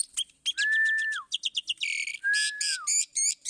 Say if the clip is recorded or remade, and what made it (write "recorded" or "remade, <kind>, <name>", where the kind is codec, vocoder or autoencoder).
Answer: recorded